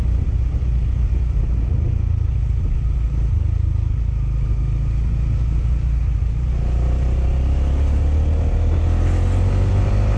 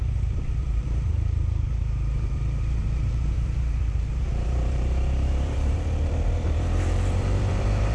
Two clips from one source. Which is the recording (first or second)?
first